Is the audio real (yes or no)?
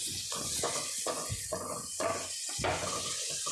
no